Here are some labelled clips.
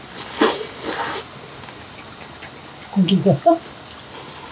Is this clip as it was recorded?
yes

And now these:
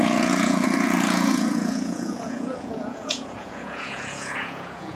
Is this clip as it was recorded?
no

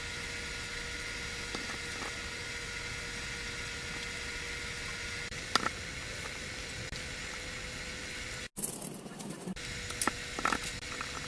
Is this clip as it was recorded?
yes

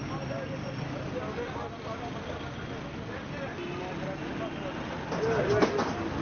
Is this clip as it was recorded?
yes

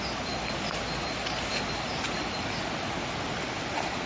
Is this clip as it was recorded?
yes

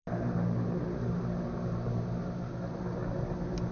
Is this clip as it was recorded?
yes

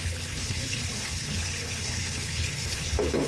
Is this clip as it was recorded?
no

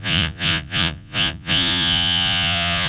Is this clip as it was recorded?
no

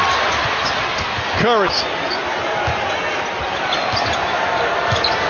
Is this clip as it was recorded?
yes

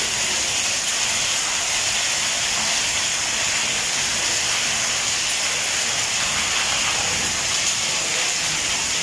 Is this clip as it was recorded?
yes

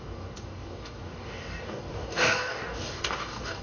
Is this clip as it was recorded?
no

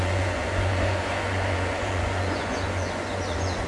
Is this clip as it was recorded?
no